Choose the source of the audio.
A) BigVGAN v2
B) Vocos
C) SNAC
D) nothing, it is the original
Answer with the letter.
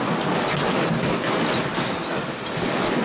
D